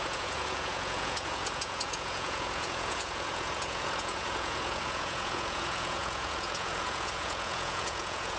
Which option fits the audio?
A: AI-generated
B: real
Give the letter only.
A